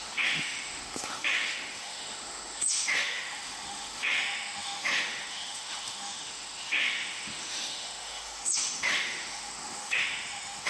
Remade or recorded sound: remade